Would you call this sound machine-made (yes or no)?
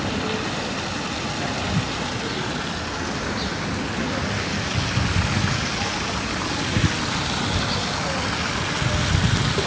no